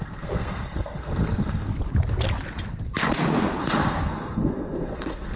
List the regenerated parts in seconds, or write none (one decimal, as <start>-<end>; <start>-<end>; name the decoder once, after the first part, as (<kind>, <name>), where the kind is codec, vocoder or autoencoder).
0.0-1.7 (codec, SNAC); 3.6-5.4